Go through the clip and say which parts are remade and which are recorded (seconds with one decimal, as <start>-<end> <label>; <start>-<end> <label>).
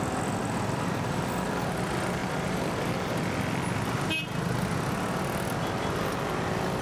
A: 0.0-6.8 recorded